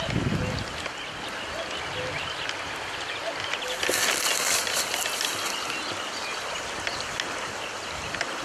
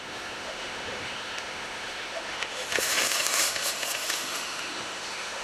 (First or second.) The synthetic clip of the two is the second